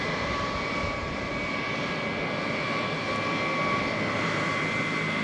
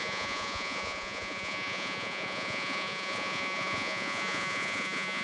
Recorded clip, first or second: first